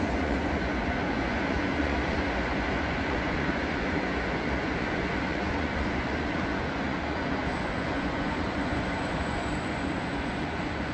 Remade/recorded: remade